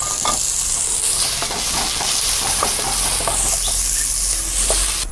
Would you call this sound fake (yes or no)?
no